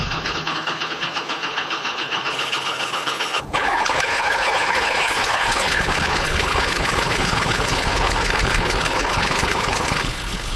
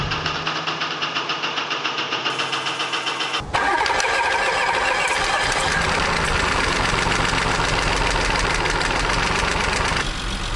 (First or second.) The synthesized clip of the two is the first